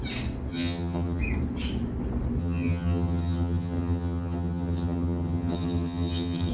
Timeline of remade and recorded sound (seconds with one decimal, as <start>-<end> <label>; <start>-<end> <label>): 0.0-0.5 recorded; 0.5-1.2 remade; 1.2-2.4 recorded; 2.4-6.5 remade